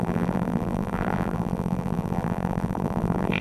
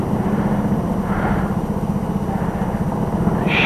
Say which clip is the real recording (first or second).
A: second